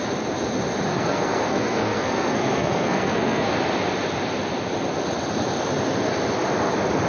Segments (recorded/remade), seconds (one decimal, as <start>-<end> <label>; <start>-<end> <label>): 0.0-0.9 recorded; 0.9-3.5 remade; 3.5-7.1 recorded